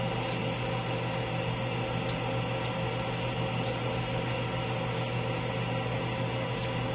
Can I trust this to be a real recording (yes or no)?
yes